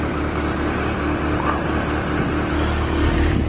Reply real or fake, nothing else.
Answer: real